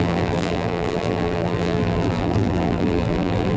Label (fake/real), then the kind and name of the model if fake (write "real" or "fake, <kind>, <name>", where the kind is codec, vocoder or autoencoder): fake, vocoder, BigVGAN v2